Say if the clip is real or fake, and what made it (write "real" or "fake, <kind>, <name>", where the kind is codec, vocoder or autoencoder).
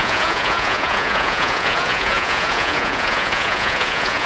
fake, vocoder, Vocos